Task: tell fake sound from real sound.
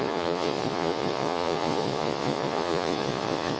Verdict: fake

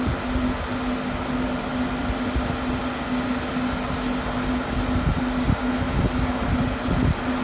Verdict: real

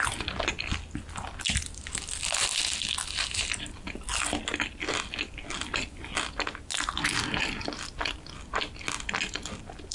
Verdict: real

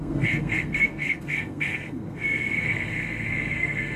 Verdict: fake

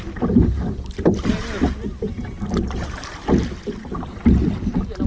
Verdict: real